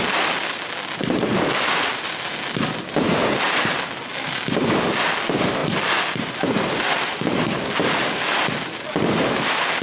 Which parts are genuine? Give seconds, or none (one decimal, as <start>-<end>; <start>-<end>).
0.0-9.8

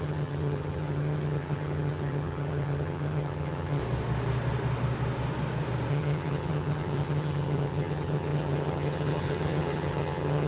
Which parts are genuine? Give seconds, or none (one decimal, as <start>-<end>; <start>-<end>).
3.8-5.9

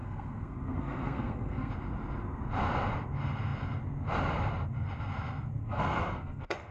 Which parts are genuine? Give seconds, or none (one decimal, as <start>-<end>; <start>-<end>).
1.7-5.6

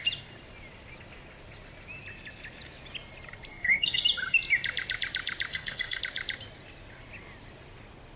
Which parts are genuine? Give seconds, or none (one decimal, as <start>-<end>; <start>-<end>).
0.0-3.5; 4.0-5.5; 6.0-8.2

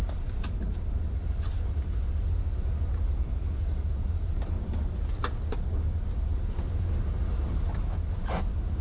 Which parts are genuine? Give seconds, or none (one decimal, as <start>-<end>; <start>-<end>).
0.0-8.8